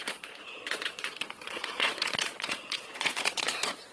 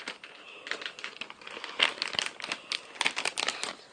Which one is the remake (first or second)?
first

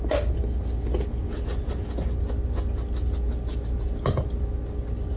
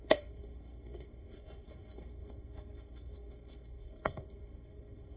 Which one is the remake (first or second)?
second